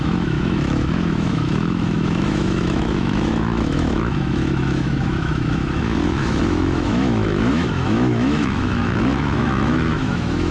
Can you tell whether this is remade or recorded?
remade